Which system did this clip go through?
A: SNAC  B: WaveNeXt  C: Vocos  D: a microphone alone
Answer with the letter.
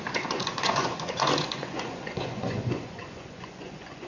C